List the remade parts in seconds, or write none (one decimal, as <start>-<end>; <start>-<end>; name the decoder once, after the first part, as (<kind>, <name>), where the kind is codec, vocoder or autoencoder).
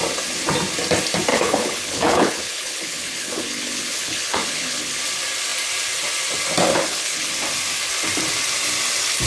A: 1.3-5.0 (codec, HILCodec); 6.7-7.3